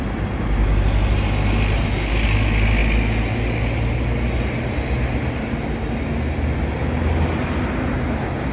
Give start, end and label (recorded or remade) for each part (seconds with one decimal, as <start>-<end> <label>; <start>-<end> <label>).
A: 0.0-8.5 recorded